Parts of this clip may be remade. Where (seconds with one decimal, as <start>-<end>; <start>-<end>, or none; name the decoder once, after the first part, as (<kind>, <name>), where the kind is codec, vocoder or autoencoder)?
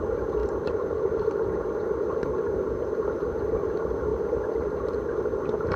0.4-1.6 (vocoder, BigVGAN v2)